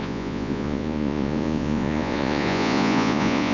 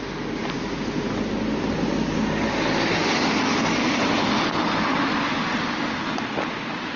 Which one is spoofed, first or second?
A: first